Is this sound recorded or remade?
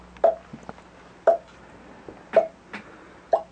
recorded